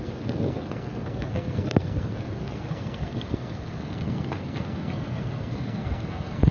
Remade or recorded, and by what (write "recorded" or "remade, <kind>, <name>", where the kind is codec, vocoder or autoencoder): remade, codec, SNAC